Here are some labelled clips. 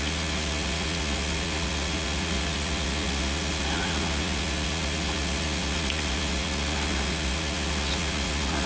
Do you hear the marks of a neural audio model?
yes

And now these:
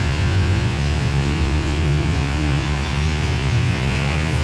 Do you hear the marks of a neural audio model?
yes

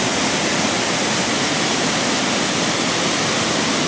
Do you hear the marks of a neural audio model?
no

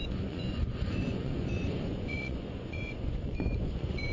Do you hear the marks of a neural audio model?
yes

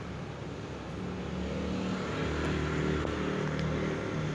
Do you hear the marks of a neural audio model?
no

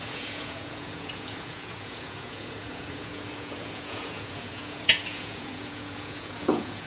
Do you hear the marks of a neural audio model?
yes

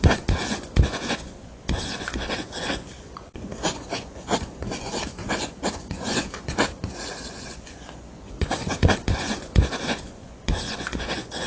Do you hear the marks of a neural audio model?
yes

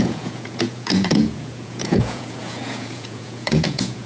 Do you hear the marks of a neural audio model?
yes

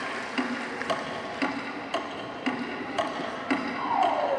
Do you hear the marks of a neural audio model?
no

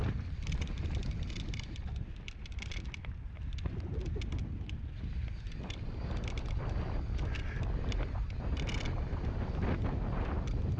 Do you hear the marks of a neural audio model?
no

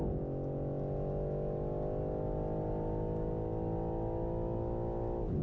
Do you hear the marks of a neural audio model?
no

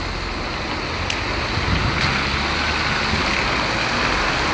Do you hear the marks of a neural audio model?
no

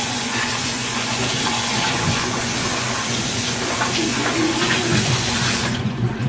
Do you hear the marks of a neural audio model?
yes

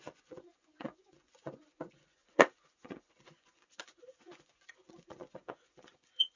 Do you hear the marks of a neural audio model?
yes